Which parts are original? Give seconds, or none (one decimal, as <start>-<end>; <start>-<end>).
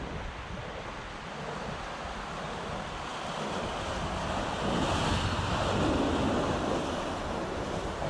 0.0-8.1